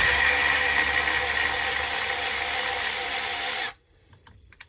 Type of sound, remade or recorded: recorded